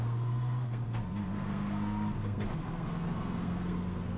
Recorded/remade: remade